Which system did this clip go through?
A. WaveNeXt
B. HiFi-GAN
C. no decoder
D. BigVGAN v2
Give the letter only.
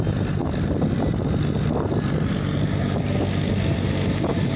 C